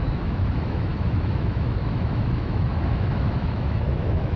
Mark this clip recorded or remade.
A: remade